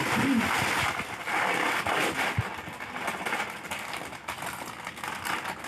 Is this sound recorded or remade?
recorded